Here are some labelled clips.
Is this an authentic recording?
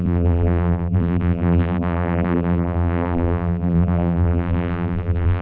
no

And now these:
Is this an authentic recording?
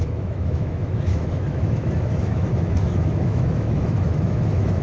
no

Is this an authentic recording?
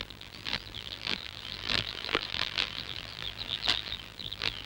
no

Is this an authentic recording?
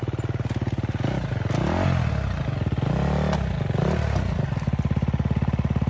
yes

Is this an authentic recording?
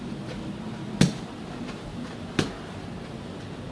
yes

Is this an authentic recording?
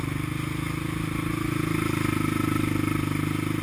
yes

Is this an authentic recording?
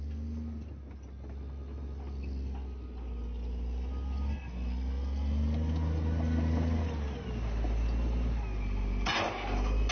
yes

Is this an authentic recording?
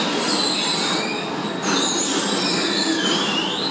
yes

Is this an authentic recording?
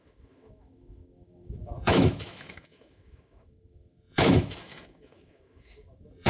no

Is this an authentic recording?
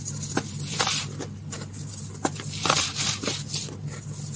yes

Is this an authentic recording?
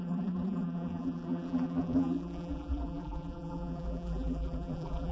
no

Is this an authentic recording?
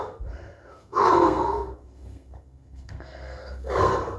no